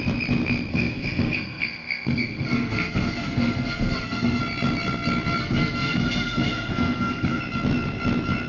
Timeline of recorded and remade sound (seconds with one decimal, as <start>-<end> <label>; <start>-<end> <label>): 0.0-0.7 recorded; 0.7-4.4 remade; 4.4-5.4 recorded; 5.4-7.4 remade; 7.4-8.5 recorded